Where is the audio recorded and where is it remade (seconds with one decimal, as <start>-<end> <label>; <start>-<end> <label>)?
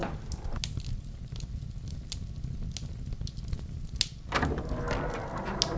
0.0-5.8 recorded